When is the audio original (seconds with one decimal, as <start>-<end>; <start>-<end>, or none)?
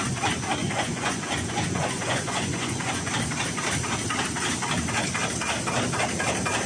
0.0-0.6; 3.1-6.7